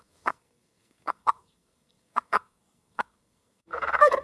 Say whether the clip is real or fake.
fake